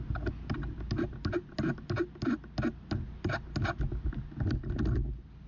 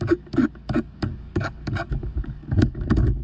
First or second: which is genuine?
first